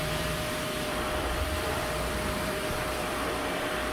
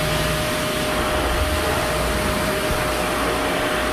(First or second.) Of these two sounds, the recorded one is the second